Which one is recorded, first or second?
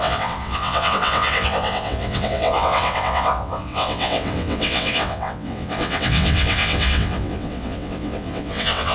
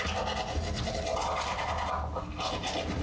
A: second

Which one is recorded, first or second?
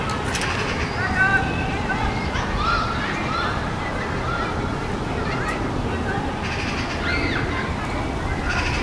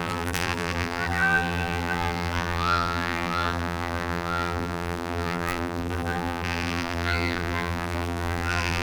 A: first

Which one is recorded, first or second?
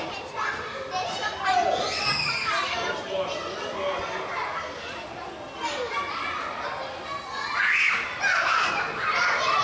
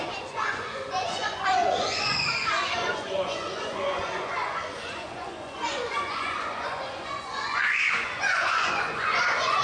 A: first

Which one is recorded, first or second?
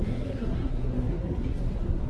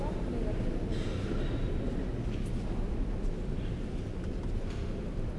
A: second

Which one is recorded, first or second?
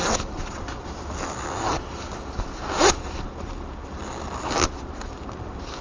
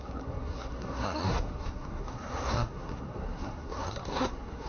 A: first